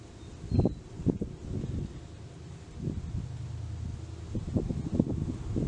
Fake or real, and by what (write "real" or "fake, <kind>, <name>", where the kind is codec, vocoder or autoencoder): real